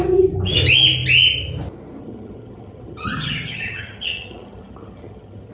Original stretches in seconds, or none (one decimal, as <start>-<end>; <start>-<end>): 0.0-2.0